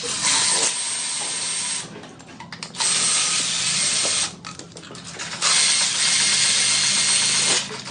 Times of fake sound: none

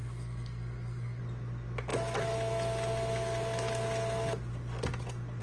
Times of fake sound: 0.0-1.2 (codec, SNAC)

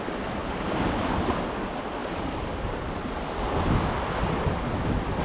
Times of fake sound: none

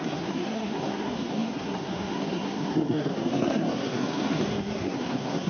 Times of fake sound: 0.0-5.5 (codec, SNAC)

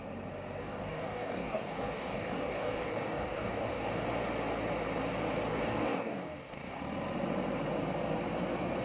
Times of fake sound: 0.6-3.9 (codec, DAC); 5.5-6.8

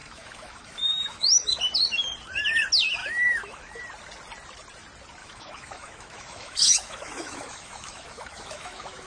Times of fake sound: 0.0-1.6 (autoencoder, DAC-VAE); 3.0-3.8; 5.2-9.1

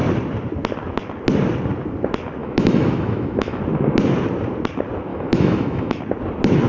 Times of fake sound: 2.4-3.6 (autoencoder, DAC-VAE); 5.1-6.0

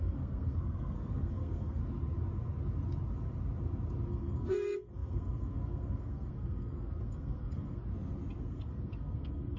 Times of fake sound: 0.0-1.8 (codec, SNAC); 4.1-7.8; 8.4-9.6